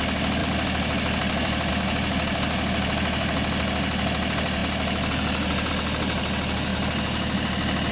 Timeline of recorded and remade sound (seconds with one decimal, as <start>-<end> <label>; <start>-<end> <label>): 0.0-0.4 recorded; 0.4-1.7 remade; 1.7-7.9 recorded